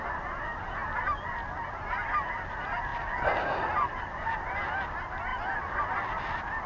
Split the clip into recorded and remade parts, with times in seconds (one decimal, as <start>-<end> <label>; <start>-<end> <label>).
0.0-2.9 recorded; 2.9-4.1 remade; 4.1-6.7 recorded